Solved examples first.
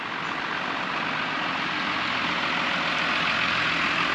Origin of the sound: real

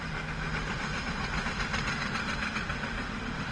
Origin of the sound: real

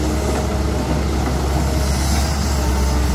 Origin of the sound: real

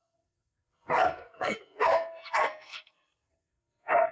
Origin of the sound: fake